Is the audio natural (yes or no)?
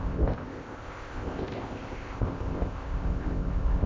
no